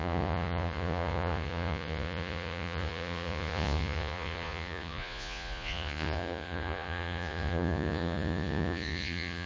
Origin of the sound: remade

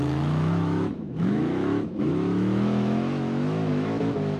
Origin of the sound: remade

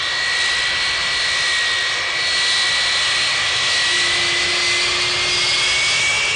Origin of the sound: recorded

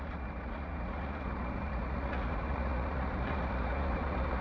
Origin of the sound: remade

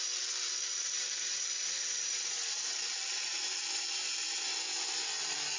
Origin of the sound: remade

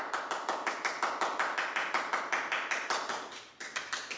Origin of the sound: recorded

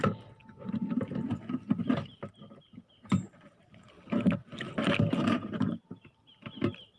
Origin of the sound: recorded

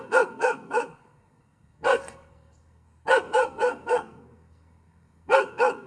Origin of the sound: remade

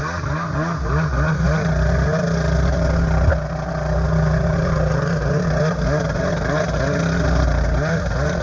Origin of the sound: recorded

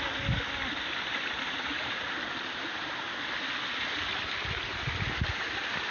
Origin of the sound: recorded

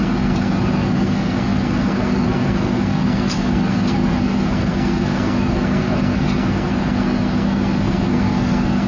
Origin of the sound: remade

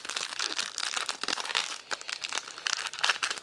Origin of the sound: recorded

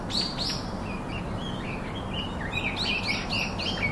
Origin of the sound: recorded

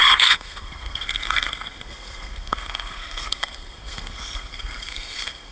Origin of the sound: remade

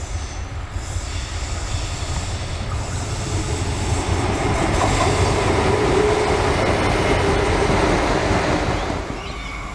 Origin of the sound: recorded